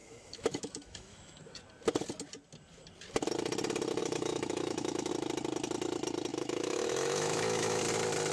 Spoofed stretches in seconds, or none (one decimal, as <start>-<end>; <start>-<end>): 0.0-1.6; 4.0-5.1; 6.3-7.8